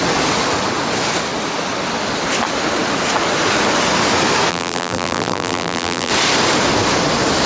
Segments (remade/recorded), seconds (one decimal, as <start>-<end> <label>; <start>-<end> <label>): 0.0-4.5 recorded; 4.5-6.1 remade; 6.1-7.5 recorded